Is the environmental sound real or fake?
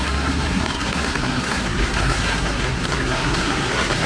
fake